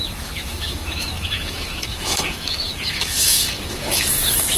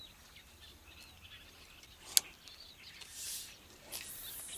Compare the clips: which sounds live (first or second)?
second